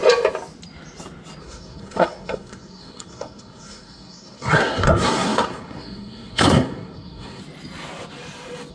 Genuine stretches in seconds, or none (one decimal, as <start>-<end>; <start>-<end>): 0.0-1.4; 7.4-8.7